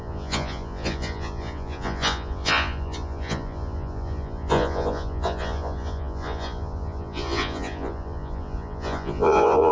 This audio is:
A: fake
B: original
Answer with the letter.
A